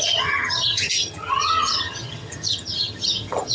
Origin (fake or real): fake